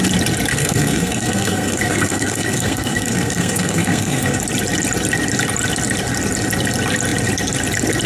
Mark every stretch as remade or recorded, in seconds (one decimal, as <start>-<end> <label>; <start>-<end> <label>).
0.0-0.5 recorded; 0.5-4.4 remade; 4.4-8.1 recorded